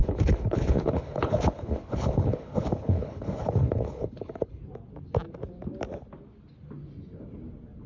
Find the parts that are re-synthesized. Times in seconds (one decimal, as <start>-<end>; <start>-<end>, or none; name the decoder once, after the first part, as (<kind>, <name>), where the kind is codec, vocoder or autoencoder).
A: 0.0-4.6 (codec, HILCodec)